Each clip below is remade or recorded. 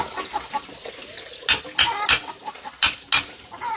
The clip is recorded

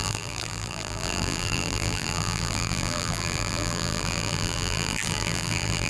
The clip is remade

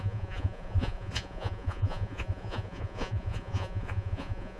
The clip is remade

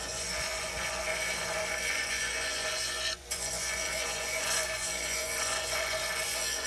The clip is remade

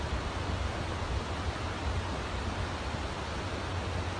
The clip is recorded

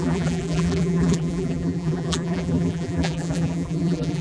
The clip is remade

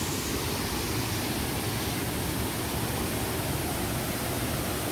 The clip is recorded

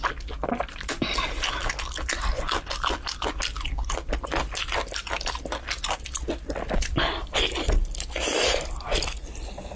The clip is recorded